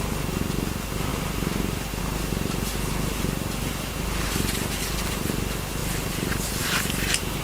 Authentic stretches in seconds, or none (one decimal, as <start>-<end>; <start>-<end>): 0.0-7.4